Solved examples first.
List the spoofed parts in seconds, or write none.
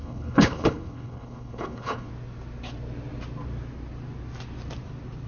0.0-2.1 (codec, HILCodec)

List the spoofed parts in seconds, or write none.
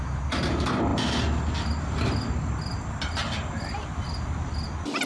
none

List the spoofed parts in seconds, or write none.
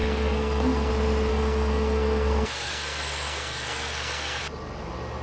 0.0-0.9 (codec, SNAC); 1.3-4.4